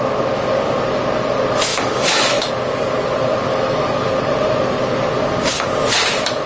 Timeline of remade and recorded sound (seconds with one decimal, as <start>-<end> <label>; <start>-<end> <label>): 0.0-1.7 recorded; 1.7-2.5 remade; 2.5-3.5 recorded; 3.5-4.1 remade; 4.1-6.5 recorded